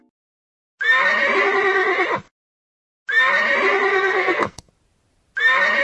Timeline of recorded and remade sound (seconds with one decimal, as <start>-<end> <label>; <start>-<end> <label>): 0.0-3.9 recorded; 3.9-4.7 remade; 4.7-5.8 recorded